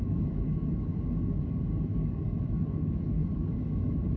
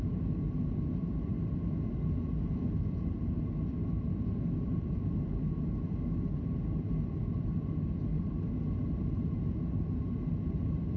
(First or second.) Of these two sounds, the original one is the second